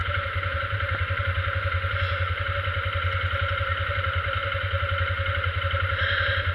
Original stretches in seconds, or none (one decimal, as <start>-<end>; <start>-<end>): 1.2-4.4; 5.6-6.5